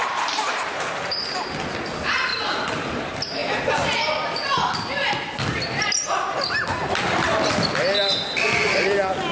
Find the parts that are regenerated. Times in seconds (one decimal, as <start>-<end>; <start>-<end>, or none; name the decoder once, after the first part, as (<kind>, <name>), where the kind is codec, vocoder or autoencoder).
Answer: 0.0-0.8 (vocoder, BigVGAN v2); 2.3-3.0